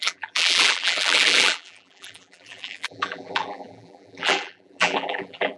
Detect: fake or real fake